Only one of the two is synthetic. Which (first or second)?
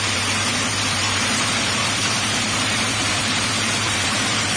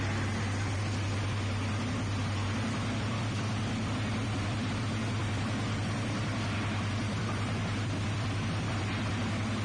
first